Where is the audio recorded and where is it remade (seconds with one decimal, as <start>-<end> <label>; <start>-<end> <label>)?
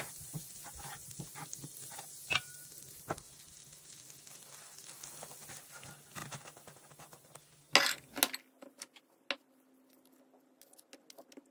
0.0-11.5 recorded